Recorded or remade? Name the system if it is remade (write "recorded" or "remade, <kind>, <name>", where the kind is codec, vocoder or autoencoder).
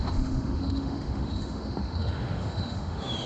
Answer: remade, autoencoder, DAC-VAE